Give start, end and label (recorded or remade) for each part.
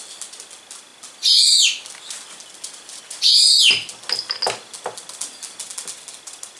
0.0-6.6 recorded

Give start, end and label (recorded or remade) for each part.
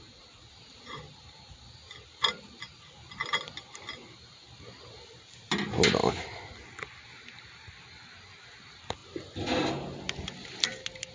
0.0-11.1 recorded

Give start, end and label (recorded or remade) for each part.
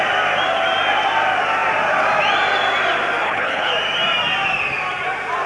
0.0-3.2 recorded; 3.2-3.7 remade; 3.7-5.5 recorded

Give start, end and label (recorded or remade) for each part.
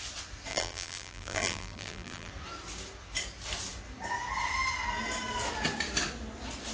0.0-0.5 recorded; 0.5-2.3 remade; 2.3-6.7 recorded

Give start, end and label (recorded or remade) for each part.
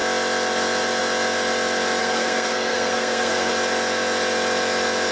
0.0-2.0 recorded; 2.0-3.5 remade; 3.5-5.1 recorded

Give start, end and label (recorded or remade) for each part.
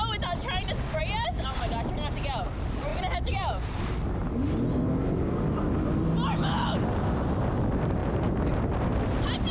0.0-2.9 recorded; 2.9-3.7 remade; 3.7-8.0 recorded; 8.0-8.6 remade; 8.6-9.5 recorded